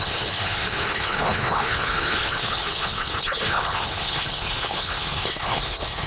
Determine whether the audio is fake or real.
fake